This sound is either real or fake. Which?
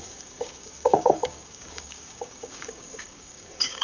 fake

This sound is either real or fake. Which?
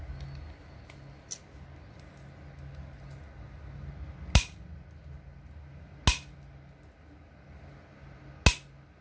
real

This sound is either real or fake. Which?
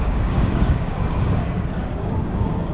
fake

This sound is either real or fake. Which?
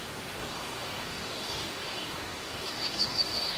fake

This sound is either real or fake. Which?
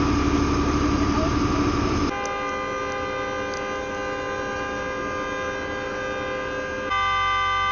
real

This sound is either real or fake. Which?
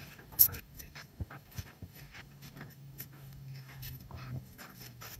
fake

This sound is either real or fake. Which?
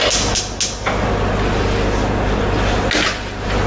real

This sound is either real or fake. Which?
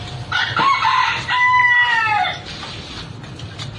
real